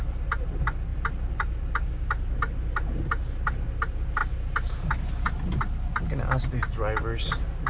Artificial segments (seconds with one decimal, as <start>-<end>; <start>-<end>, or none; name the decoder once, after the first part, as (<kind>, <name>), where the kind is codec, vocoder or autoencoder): none